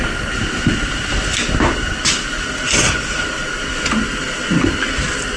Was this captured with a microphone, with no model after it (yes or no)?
yes